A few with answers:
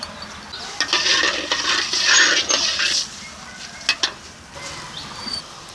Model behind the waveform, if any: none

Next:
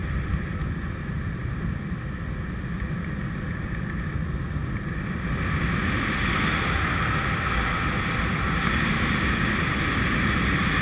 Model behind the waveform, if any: none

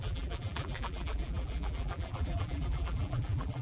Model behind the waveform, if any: vocoder, BigVGAN v2